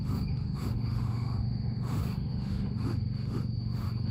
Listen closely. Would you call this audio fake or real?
fake